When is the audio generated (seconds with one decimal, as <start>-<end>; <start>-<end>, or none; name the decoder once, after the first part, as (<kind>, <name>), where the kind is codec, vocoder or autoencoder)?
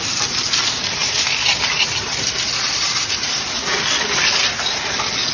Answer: 1.0-4.2 (vocoder, BigVGAN v2)